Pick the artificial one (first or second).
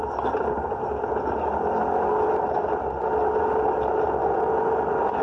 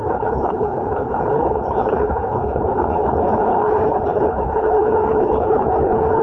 second